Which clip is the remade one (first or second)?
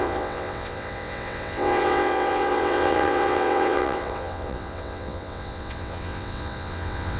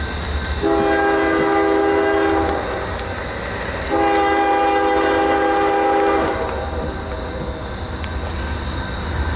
first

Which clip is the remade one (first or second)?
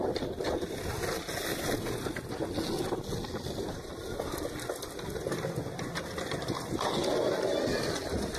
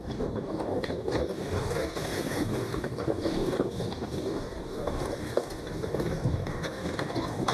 second